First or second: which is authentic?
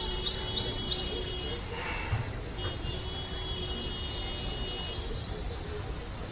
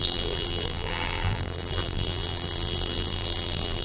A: first